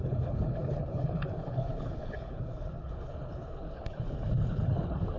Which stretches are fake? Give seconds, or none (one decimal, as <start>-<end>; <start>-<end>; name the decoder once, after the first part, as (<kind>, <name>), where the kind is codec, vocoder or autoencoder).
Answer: 0.0-5.2 (codec, HILCodec)